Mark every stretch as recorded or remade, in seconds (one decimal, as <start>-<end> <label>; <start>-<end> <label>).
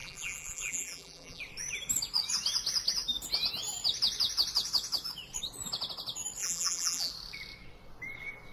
0.0-1.4 remade; 1.4-6.4 recorded; 6.4-7.1 remade; 7.1-8.5 recorded